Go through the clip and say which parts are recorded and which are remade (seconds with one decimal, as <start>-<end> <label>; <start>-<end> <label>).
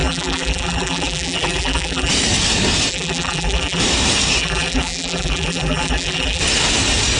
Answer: 0.0-2.1 remade; 2.1-2.9 recorded; 2.9-3.8 remade; 3.8-4.4 recorded; 4.4-6.4 remade; 6.4-7.2 recorded